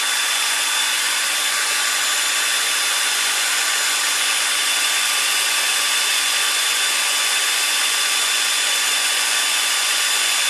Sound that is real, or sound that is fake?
fake